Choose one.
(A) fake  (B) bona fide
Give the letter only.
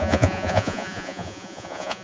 A